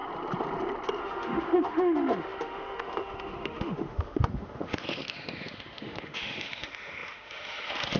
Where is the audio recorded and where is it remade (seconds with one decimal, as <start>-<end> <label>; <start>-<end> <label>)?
0.0-1.0 recorded; 1.0-8.0 remade